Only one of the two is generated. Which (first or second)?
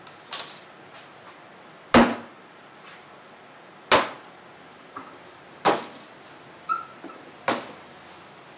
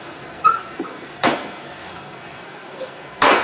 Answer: second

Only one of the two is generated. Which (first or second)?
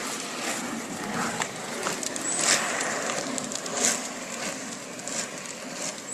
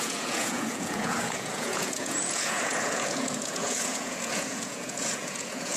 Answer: second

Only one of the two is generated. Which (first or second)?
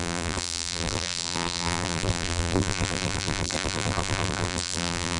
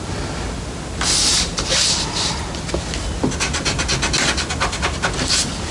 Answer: first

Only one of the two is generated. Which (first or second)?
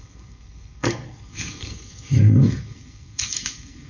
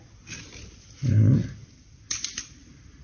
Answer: first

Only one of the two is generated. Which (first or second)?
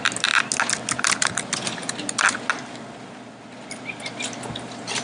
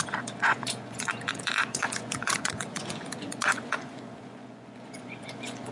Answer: second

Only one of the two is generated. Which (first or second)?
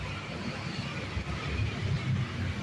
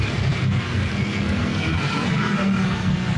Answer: second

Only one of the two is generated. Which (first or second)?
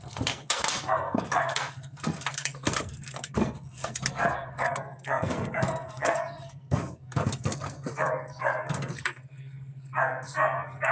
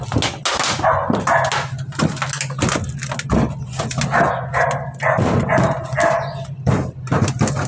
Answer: first